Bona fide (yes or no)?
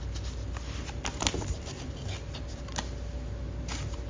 yes